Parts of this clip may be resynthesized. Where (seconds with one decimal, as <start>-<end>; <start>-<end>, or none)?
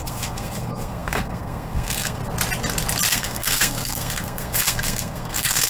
0.0-2.2; 3.1-5.7